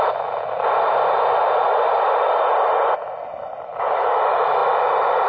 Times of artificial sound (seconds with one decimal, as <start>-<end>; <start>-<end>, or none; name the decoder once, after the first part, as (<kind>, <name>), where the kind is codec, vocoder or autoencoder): none